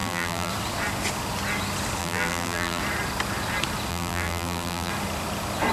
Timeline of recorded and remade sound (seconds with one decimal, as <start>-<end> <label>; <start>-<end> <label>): 0.0-0.5 remade; 0.5-2.0 recorded; 2.0-2.8 remade; 2.8-3.9 recorded; 3.9-4.9 remade; 4.9-5.7 recorded